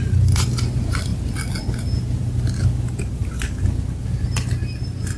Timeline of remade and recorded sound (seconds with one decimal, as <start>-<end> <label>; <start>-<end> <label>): 0.0-5.2 recorded